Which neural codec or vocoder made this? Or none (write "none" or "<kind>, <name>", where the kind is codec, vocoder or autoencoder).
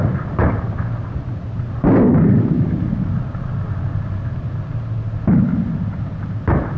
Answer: none